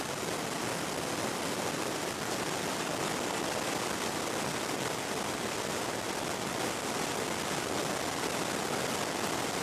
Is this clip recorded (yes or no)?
yes